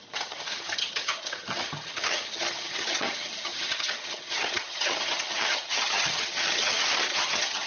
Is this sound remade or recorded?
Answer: remade